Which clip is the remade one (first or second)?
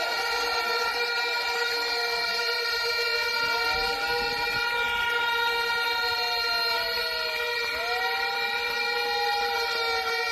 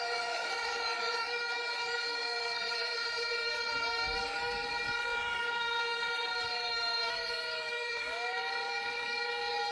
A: second